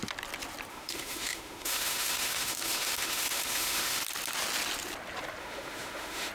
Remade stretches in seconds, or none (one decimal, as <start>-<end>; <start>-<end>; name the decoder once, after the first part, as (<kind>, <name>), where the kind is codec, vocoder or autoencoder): 0.7-4.0 (autoencoder, DAC-VAE); 5.4-6.3